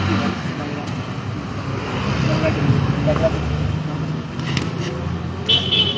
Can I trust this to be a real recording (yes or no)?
yes